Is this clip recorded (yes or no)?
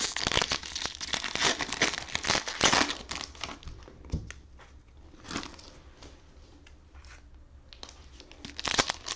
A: yes